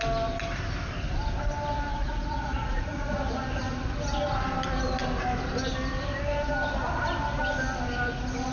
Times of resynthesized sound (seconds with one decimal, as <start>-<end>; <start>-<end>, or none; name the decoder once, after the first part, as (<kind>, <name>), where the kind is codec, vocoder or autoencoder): 1.9-3.1 (vocoder, Vocos)